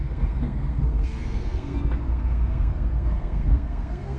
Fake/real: fake